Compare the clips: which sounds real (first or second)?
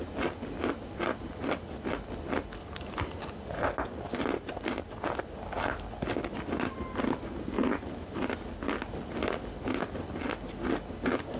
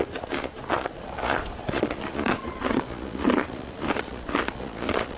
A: first